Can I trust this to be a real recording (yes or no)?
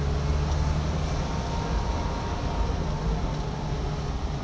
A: yes